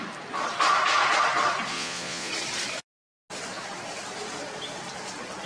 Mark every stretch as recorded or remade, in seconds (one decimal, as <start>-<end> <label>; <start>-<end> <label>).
0.0-1.7 recorded; 1.7-2.3 remade; 2.3-5.5 recorded